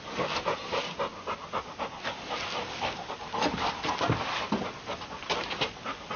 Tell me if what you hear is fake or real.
real